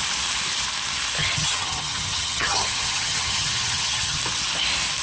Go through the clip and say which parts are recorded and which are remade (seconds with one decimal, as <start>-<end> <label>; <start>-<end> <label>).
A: 0.0-1.2 recorded; 1.2-4.2 remade; 4.2-5.0 recorded